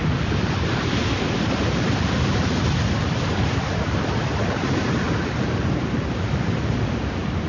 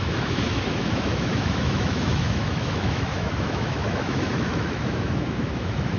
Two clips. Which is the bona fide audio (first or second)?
first